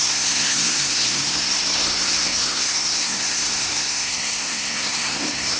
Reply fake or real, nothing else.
fake